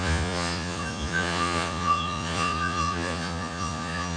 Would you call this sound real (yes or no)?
no